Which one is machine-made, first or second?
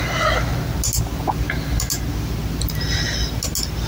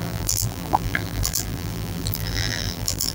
second